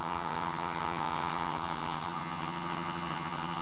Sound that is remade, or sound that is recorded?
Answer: remade